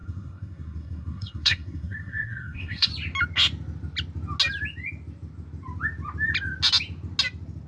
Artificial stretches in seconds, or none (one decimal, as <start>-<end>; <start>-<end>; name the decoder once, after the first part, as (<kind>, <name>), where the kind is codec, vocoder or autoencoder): 0.0-2.9 (codec, SNAC)